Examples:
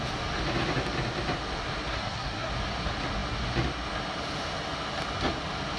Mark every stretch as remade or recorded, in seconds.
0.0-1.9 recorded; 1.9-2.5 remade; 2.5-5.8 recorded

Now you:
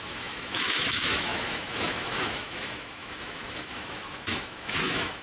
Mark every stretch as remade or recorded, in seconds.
0.0-5.2 remade

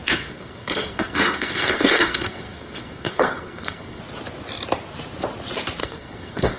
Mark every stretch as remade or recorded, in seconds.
0.0-4.0 remade; 4.0-5.8 recorded; 5.8-6.6 remade

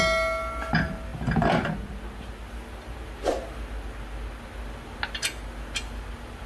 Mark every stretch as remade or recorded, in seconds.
0.0-6.5 recorded

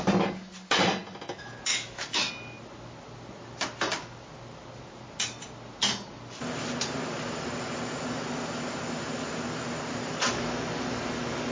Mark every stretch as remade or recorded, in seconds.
0.0-1.7 recorded; 1.7-2.3 remade; 2.3-11.5 recorded

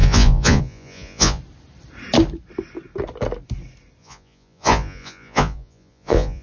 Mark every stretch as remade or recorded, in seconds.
0.0-1.4 remade; 1.4-4.0 recorded; 4.0-6.4 remade